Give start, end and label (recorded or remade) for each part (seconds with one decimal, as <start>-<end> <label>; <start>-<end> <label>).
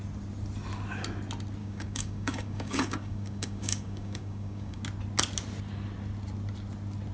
0.0-1.6 recorded; 1.6-4.8 remade; 4.8-7.1 recorded